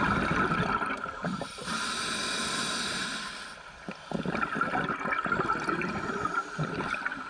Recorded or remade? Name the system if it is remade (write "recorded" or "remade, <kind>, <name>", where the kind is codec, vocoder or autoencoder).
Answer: recorded